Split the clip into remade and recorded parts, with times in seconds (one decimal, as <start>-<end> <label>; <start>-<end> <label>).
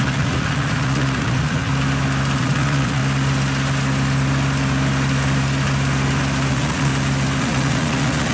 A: 0.0-1.7 remade; 1.7-2.4 recorded; 2.4-3.0 remade; 3.0-6.5 recorded; 6.5-6.9 remade; 6.9-7.4 recorded; 7.4-8.3 remade